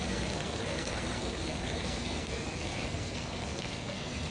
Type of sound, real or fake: fake